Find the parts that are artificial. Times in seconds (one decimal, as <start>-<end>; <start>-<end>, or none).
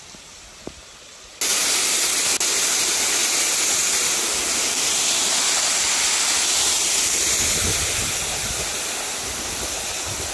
none